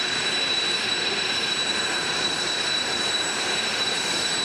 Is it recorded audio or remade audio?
remade